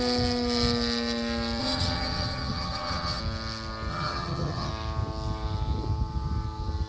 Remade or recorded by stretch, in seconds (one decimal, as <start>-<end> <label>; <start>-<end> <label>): 0.0-1.6 recorded; 1.6-3.2 remade; 3.2-3.9 recorded; 3.9-4.7 remade; 4.7-6.9 recorded

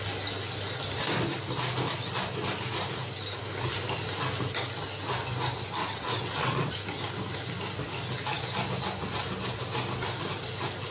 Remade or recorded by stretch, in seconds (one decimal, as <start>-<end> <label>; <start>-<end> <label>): 0.0-5.8 recorded; 5.8-6.7 remade; 6.7-10.9 recorded